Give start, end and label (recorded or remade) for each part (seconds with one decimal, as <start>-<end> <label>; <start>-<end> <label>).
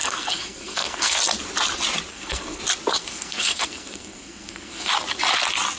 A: 0.0-1.2 remade; 1.2-2.1 recorded; 2.1-2.6 remade; 2.6-3.0 recorded; 3.0-4.9 remade; 4.9-5.8 recorded